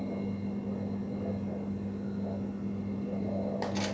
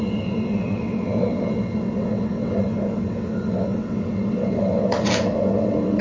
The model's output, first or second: second